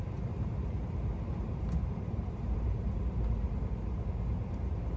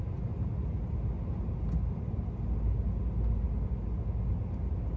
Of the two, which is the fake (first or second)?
first